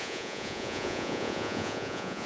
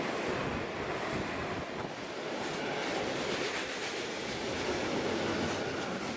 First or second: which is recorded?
second